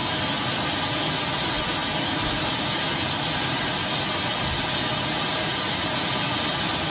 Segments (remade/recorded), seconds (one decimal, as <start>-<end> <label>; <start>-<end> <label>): 0.0-6.9 recorded